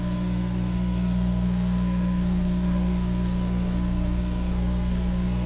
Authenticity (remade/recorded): remade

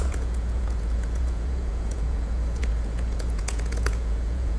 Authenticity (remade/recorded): remade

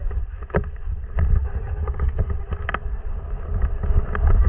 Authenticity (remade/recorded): recorded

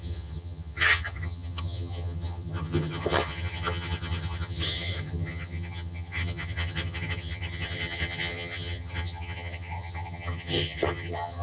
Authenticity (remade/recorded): remade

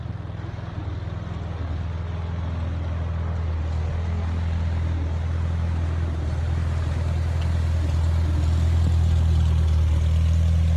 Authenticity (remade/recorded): recorded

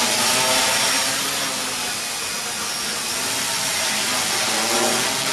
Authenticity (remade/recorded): recorded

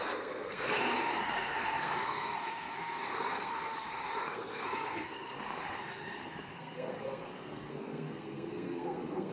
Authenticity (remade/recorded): remade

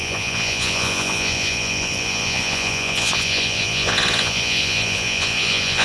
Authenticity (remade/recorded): remade